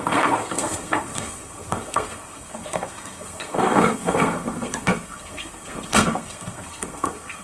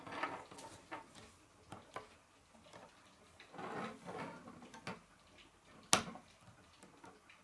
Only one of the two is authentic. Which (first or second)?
second